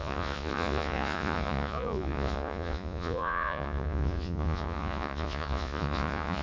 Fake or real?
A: fake